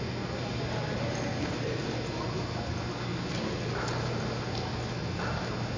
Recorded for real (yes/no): yes